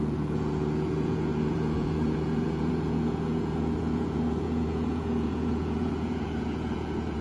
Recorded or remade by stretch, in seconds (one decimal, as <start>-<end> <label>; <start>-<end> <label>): 0.0-7.2 remade